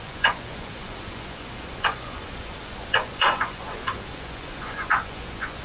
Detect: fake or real fake